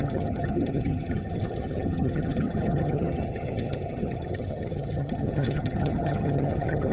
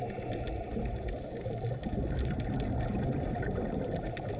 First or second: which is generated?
first